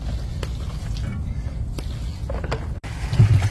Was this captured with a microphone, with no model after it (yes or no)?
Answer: yes